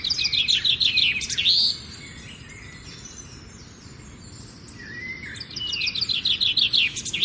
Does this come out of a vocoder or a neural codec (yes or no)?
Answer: no